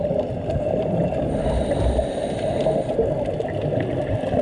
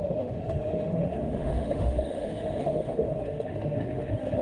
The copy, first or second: second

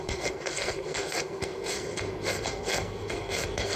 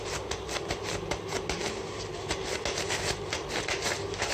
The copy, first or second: first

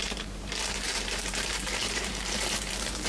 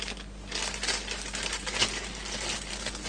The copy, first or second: first